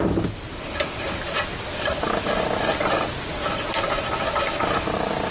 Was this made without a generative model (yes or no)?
yes